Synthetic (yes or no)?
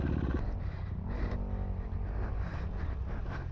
no